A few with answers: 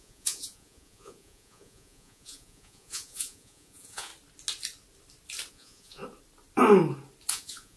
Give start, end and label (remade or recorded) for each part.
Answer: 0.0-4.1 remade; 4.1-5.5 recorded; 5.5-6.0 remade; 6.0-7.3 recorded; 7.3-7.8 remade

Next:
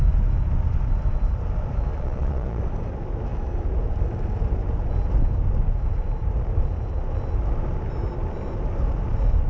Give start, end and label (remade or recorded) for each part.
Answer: 0.0-1.9 recorded; 1.9-2.6 remade; 2.6-9.5 recorded

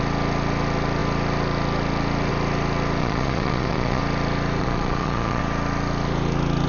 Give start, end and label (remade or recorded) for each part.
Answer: 0.0-3.0 recorded; 3.0-4.0 remade; 4.0-4.6 recorded; 4.6-5.4 remade; 5.4-6.7 recorded

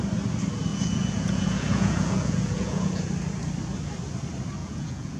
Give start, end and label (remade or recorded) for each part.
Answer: 0.0-0.7 recorded; 0.7-3.0 remade; 3.0-4.6 recorded; 4.6-5.2 remade

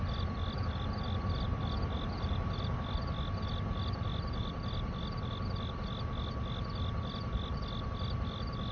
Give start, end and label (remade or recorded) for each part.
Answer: 0.0-8.7 recorded

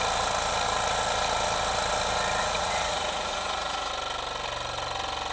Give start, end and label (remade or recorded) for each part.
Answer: 0.0-2.4 recorded; 2.4-3.9 remade; 3.9-5.3 recorded

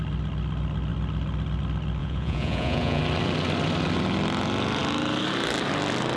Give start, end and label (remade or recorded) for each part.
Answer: 0.0-2.0 recorded; 2.0-3.0 remade; 3.0-6.2 recorded

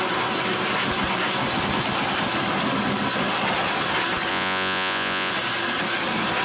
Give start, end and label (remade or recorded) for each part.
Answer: 0.0-4.3 recorded; 4.3-5.3 remade; 5.3-6.4 recorded